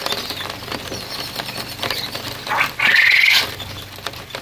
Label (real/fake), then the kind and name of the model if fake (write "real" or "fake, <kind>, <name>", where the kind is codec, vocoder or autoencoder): real